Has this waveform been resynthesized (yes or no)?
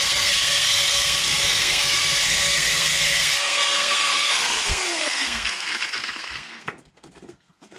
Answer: yes